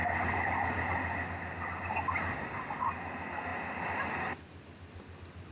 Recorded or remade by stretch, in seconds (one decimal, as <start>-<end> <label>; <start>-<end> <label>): 0.0-2.3 recorded; 2.3-2.9 remade; 2.9-5.5 recorded